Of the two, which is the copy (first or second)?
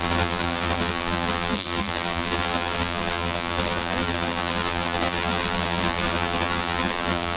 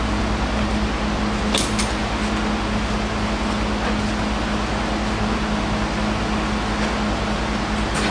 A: first